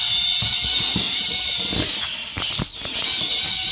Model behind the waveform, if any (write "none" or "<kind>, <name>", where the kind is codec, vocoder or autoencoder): none